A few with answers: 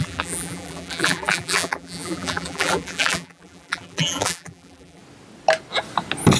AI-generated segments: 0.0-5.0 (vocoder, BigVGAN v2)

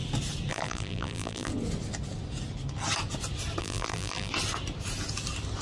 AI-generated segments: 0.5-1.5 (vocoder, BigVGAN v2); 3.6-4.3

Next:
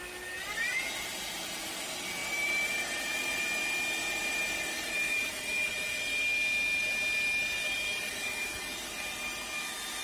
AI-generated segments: 2.2-3.4 (vocoder, BigVGAN v2); 4.0-5.7